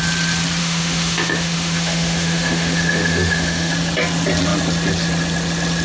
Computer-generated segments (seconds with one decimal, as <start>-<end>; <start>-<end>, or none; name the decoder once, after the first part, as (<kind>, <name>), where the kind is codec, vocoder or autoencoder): 0.6-3.7 (autoencoder, DAC-VAE)